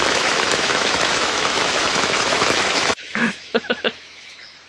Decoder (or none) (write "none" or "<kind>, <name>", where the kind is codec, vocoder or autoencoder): autoencoder, DAC-VAE